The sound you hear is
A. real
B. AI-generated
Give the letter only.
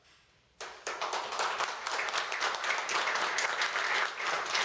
A